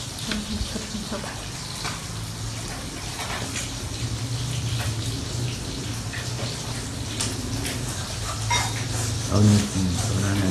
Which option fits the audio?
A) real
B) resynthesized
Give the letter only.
A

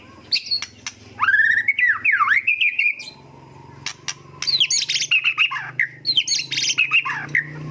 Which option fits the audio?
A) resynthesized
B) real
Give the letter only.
B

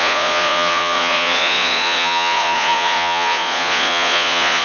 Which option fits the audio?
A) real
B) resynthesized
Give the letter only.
B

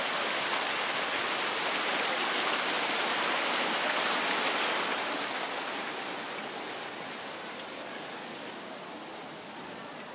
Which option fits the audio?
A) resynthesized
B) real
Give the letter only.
B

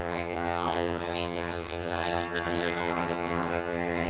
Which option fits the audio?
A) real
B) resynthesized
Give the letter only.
B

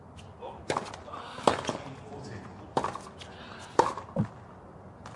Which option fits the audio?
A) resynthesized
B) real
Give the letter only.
B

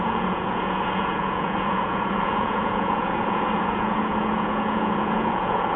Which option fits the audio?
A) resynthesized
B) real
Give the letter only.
A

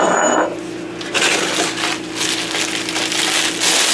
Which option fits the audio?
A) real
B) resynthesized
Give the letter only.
A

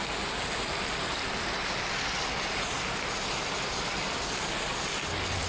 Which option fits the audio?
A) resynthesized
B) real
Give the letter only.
B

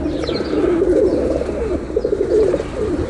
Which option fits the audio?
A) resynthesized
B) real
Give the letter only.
B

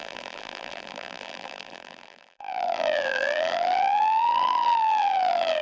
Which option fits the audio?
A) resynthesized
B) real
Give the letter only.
A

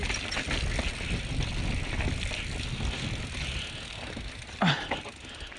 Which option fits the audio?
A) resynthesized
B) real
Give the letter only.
B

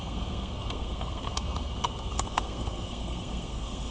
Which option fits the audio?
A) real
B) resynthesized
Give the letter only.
B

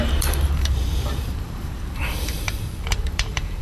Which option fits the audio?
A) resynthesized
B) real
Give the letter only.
A